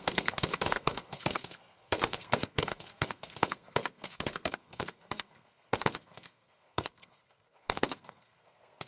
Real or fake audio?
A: fake